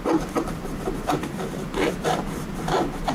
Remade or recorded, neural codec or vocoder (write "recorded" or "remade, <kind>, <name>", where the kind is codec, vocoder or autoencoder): recorded